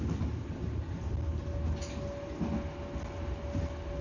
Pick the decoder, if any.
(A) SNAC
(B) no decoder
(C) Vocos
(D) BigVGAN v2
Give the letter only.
B